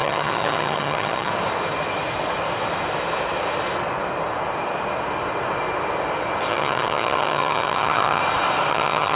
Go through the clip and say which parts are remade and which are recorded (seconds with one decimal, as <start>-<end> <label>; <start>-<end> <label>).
0.0-1.3 remade; 1.3-6.5 recorded; 6.5-8.2 remade; 8.2-8.7 recorded; 8.7-9.2 remade